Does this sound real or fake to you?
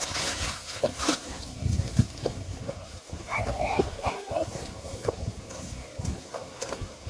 fake